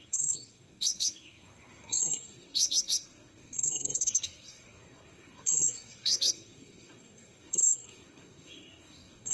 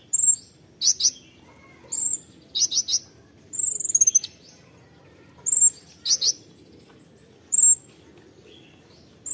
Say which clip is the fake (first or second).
first